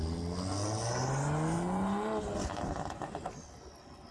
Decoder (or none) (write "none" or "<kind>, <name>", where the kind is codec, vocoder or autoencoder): none